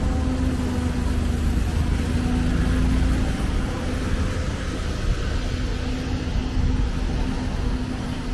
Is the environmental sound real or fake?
real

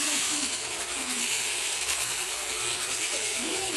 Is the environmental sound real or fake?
fake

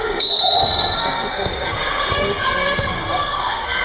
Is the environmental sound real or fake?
fake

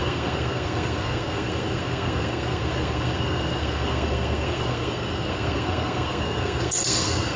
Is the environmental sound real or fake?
fake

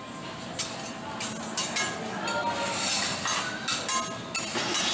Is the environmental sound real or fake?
real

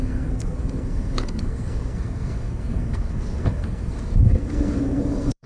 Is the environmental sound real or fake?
fake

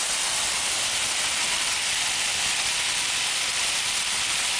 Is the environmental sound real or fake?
real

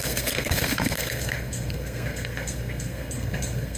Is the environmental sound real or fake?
fake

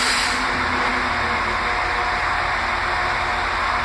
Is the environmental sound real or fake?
real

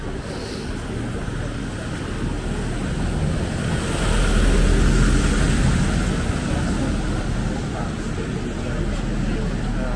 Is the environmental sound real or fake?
real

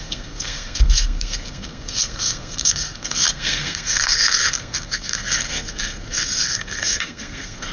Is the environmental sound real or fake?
fake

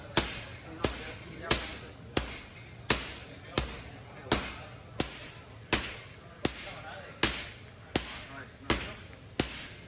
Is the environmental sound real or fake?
real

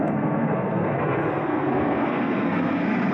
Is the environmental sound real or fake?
fake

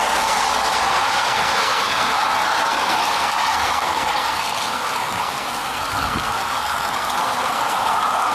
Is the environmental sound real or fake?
fake